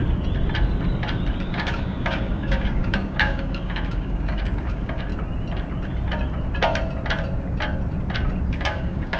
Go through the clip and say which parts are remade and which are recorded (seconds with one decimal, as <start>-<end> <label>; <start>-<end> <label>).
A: 0.0-1.4 recorded; 1.4-5.1 remade; 5.1-8.5 recorded; 8.5-9.2 remade